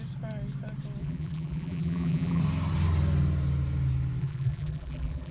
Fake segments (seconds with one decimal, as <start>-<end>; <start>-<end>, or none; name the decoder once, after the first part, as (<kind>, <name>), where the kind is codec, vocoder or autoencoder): 1.0-2.4 (vocoder, BigVGAN v2); 4.2-5.3

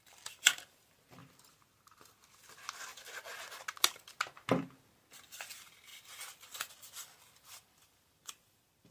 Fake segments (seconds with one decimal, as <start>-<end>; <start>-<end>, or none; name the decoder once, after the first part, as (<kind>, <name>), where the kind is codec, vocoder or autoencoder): 0.0-1.2 (vocoder, BigVGAN v2); 4.7-8.9

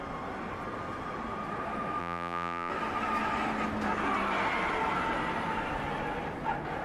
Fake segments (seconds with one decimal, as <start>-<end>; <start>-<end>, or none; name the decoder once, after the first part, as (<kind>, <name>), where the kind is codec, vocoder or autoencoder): 2.0-2.7 (vocoder, BigVGAN v2)

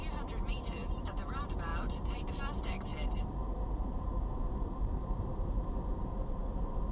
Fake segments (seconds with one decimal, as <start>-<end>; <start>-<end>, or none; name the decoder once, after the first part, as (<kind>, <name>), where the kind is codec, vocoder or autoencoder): 0.0-1.7 (vocoder, BigVGAN v2); 2.4-2.9; 4.5-6.9

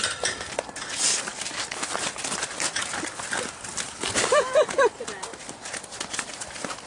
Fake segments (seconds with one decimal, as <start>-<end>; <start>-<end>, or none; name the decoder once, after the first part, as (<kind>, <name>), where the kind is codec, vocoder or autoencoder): 0.0-6.9 (vocoder, BigVGAN v2)

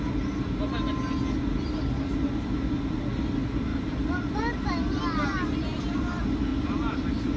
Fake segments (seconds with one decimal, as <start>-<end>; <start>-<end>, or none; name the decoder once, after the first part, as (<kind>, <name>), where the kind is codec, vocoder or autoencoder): 3.7-4.4 (vocoder, BigVGAN v2); 6.5-7.4

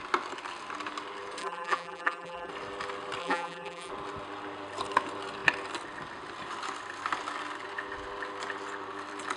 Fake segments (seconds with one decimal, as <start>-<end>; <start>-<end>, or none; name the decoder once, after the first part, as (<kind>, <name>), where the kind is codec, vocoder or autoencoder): 1.4-2.5 (vocoder, BigVGAN v2); 3.2-3.9

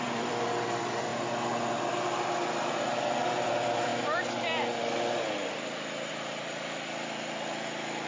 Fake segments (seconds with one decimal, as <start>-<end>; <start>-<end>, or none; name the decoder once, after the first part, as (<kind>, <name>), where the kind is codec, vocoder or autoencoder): 0.0-1.1 (vocoder, BigVGAN v2); 2.7-3.9; 6.1-8.1